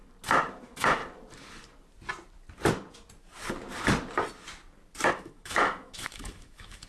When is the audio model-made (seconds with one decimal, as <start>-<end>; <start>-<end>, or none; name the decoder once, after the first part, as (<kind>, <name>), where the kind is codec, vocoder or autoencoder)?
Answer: 0.6-1.0 (autoencoder, DAC-VAE); 5.1-6.9